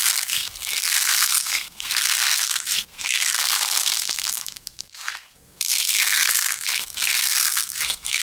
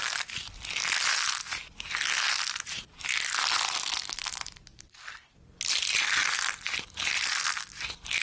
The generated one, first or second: first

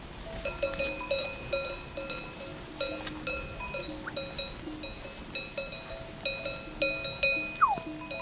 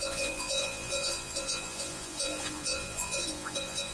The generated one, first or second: second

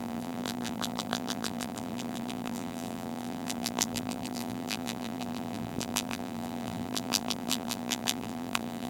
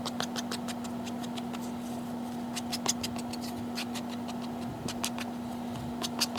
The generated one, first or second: first